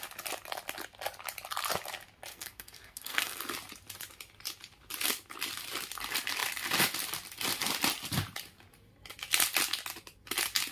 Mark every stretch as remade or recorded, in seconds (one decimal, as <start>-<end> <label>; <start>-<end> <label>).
0.0-2.3 recorded; 2.3-3.4 remade; 3.4-10.7 recorded